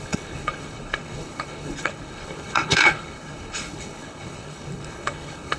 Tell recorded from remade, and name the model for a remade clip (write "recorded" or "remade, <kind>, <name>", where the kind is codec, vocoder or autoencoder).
remade, codec, HILCodec